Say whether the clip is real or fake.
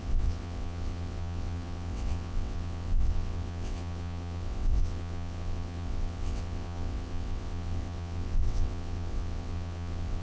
fake